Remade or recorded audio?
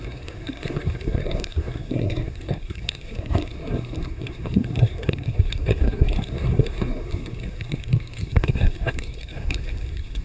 remade